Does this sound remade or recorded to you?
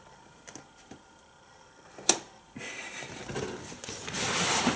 recorded